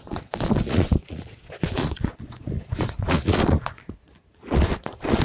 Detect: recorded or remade remade